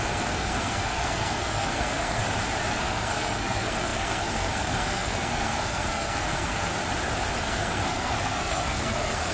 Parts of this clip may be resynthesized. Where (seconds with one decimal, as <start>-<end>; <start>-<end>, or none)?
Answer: 0.0-2.2; 2.7-6.7; 7.4-9.3